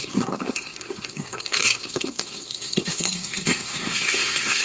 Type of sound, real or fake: fake